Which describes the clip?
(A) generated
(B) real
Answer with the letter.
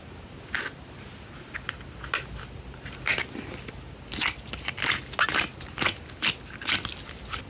B